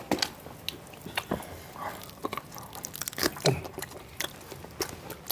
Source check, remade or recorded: recorded